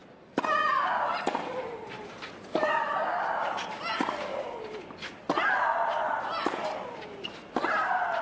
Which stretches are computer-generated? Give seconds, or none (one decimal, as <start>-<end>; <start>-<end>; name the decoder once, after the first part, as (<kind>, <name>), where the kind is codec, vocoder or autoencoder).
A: none